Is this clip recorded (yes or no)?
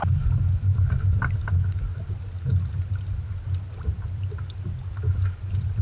yes